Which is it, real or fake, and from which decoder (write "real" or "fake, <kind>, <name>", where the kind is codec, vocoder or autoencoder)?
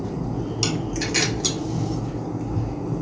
real